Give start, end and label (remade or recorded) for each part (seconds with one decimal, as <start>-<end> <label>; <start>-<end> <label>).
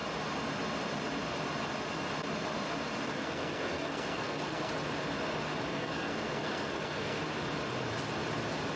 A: 0.0-3.1 recorded; 3.1-4.7 remade; 4.7-5.7 recorded; 5.7-7.2 remade; 7.2-8.8 recorded